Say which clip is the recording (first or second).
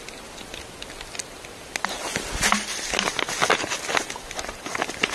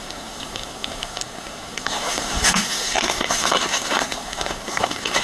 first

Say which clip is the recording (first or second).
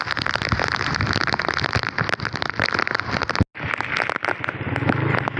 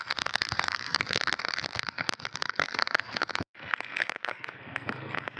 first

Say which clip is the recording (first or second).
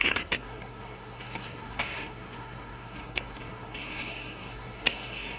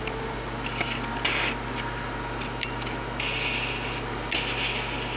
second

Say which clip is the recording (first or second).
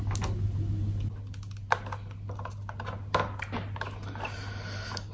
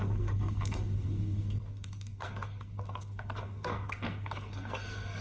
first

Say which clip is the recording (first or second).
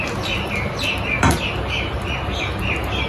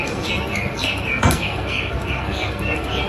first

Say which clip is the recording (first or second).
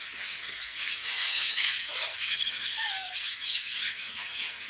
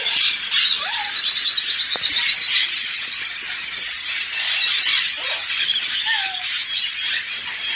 second